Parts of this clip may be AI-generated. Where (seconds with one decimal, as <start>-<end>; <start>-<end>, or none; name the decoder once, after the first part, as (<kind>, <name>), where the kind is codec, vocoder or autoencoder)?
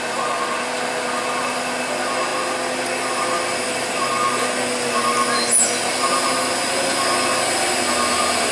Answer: none